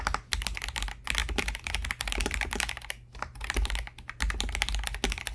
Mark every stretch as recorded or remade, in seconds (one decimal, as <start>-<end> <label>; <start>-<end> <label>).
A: 0.0-5.3 recorded